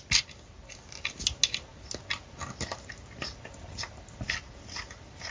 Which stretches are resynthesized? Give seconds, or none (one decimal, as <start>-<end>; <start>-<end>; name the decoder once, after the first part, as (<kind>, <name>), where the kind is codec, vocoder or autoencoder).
none